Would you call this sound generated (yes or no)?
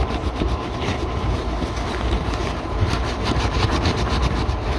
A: yes